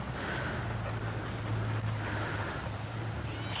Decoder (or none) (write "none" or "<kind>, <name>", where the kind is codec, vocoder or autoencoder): none